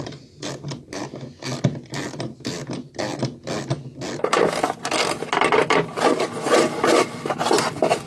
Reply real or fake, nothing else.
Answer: real